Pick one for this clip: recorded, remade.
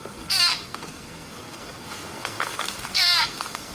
remade